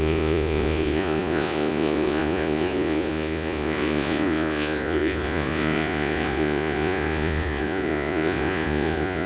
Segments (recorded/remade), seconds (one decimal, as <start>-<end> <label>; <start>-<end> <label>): 0.0-9.3 remade

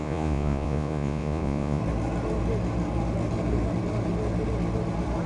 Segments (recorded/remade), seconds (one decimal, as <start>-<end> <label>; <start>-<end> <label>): 0.0-1.8 remade; 1.8-5.3 recorded